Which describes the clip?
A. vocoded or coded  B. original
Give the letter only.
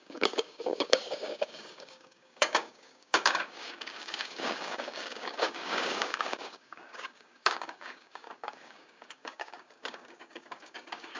A